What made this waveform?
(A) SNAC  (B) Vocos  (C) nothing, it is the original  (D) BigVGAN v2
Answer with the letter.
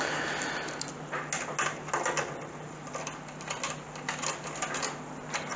C